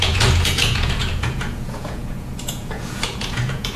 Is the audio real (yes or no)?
no